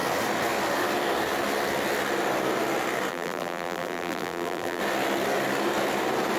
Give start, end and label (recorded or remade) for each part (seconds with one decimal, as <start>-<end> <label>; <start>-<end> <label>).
0.0-3.1 recorded; 3.1-4.8 remade; 4.8-6.4 recorded